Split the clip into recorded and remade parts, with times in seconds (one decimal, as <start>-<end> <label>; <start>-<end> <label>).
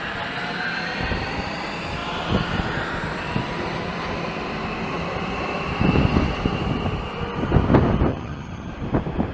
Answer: 0.0-8.1 recorded; 8.1-8.7 remade; 8.7-9.3 recorded